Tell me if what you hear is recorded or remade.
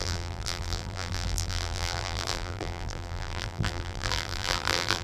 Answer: remade